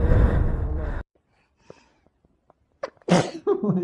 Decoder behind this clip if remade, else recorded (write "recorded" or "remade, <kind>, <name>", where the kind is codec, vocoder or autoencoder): remade, vocoder, BigVGAN v2